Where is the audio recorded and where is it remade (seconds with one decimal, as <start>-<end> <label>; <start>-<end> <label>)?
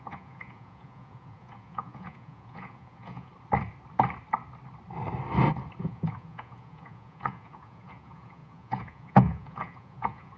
0.0-3.3 remade; 3.3-5.8 recorded; 5.8-10.4 remade